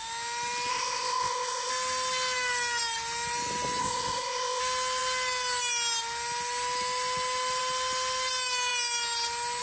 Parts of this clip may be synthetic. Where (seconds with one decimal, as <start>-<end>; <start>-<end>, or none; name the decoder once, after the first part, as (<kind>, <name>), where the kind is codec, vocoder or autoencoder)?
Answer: 0.7-1.7 (codec, ZipCodec); 3.8-4.6